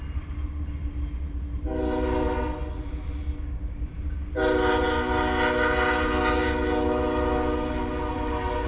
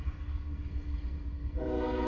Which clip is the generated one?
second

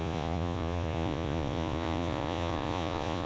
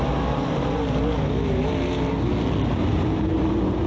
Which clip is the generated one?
first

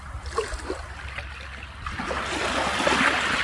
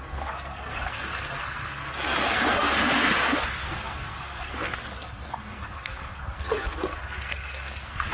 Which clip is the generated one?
second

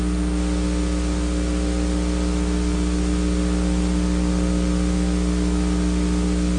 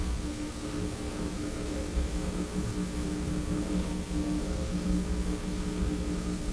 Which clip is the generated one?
second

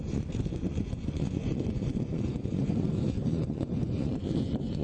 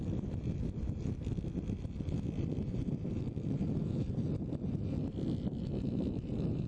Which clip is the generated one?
first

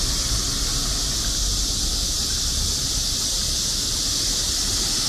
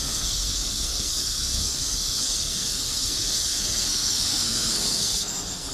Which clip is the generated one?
second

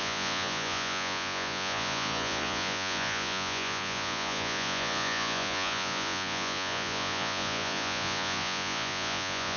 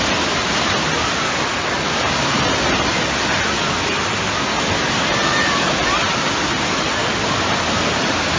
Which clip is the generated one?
first